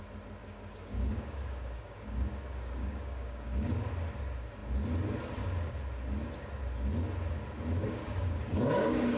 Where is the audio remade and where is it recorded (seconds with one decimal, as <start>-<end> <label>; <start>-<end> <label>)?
0.0-0.4 recorded; 0.4-3.9 remade; 3.9-7.8 recorded; 7.8-9.2 remade